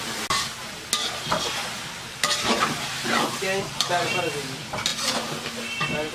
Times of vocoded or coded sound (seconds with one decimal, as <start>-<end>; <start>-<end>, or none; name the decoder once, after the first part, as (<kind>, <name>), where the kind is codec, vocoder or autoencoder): none